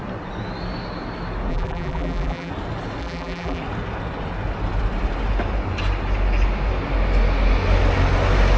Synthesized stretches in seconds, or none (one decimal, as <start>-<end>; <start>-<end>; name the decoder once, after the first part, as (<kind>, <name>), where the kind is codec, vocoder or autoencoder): 1.5-2.5 (vocoder, BigVGAN v2); 3.0-3.6